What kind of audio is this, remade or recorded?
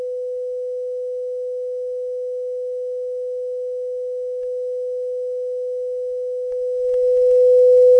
remade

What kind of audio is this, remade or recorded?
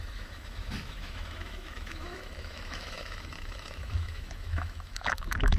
remade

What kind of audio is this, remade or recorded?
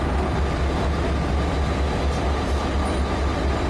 recorded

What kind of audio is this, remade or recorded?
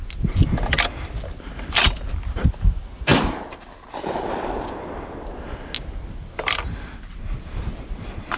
recorded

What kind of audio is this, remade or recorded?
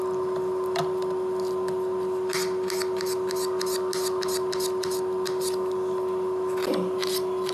recorded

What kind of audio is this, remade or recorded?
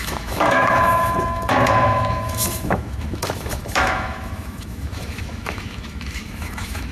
remade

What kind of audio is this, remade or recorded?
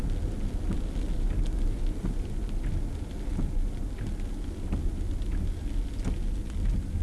recorded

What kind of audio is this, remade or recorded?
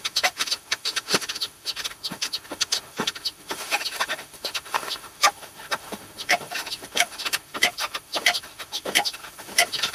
remade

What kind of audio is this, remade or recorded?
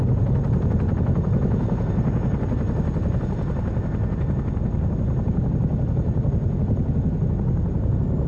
recorded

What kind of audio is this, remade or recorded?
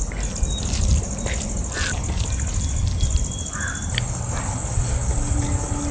recorded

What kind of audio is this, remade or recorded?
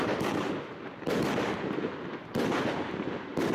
recorded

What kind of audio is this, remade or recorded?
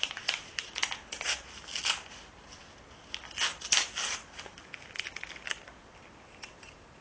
recorded